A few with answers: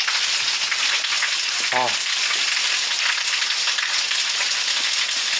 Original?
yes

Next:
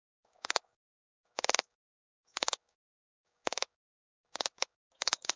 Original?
no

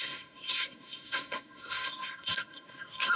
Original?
no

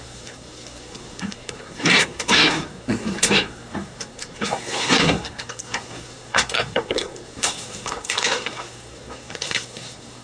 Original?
no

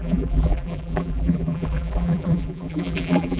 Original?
no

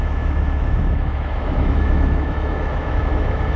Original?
no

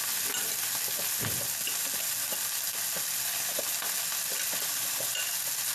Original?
yes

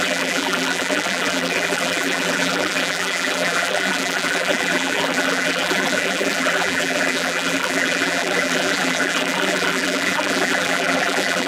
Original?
no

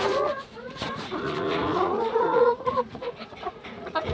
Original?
no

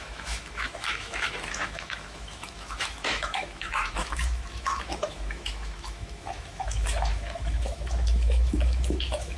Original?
no